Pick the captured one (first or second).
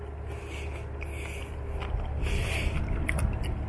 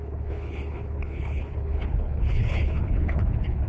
first